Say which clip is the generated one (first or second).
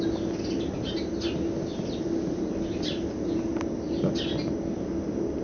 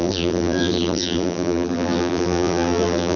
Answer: second